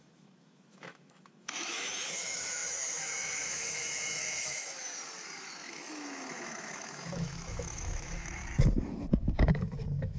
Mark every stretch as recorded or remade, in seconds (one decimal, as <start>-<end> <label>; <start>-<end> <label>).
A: 0.0-4.9 remade; 4.9-5.4 recorded; 5.4-8.4 remade; 8.4-9.1 recorded; 9.1-10.2 remade